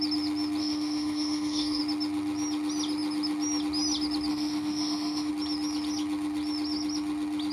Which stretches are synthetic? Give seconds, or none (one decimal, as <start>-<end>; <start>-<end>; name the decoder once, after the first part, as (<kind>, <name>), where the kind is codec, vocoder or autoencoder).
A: 0.6-1.8 (autoencoder, DAC-VAE); 4.3-5.3